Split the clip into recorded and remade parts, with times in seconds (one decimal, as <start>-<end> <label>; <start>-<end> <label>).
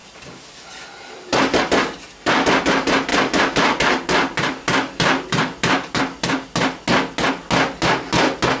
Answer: 0.0-1.6 remade; 1.6-3.1 recorded; 3.1-6.0 remade; 6.0-8.6 recorded